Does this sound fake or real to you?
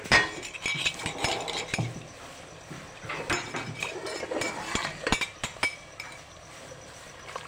real